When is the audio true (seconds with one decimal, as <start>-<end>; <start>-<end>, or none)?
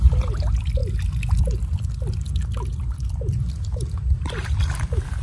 0.0-5.2